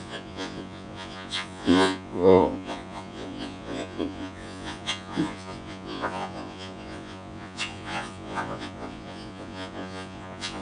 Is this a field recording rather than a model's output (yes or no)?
no